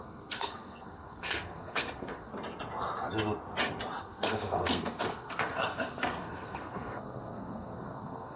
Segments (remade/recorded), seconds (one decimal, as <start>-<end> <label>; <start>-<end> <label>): 0.0-2.3 remade; 2.3-4.0 recorded; 4.0-8.4 remade